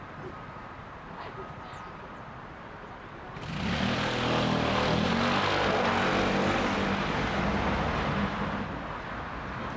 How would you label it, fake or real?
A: real